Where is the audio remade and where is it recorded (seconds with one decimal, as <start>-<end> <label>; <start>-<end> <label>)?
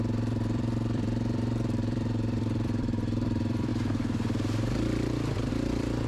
0.0-3.7 remade; 3.7-5.5 recorded; 5.5-6.1 remade